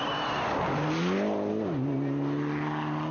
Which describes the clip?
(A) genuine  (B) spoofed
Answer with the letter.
A